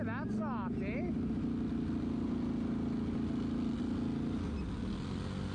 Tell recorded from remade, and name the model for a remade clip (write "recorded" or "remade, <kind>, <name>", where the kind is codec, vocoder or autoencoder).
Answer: recorded